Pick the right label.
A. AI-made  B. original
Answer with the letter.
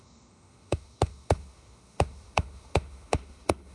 A